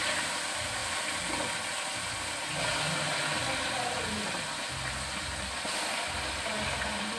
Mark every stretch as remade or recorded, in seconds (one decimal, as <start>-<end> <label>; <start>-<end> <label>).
0.0-7.2 recorded